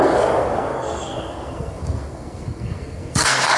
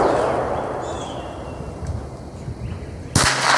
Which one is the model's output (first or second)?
first